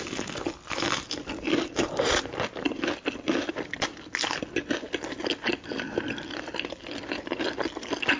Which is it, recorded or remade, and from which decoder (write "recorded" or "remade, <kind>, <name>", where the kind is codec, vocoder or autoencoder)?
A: recorded